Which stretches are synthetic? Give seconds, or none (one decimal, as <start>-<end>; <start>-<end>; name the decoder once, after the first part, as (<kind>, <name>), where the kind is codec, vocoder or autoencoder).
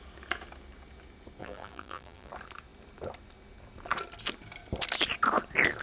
1.4-2.3 (vocoder, BigVGAN v2)